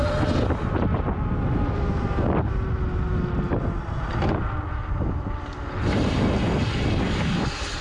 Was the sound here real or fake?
real